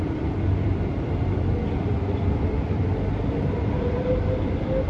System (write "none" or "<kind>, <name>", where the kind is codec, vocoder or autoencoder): vocoder, BigVGAN v2